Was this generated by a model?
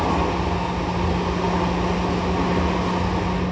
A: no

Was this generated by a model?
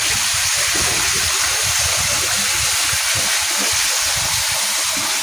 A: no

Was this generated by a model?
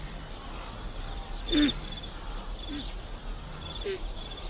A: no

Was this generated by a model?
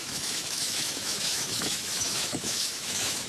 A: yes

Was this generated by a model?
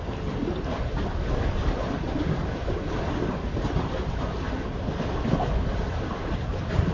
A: no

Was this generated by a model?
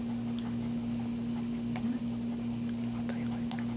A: no